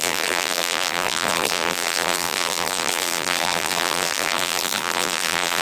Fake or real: fake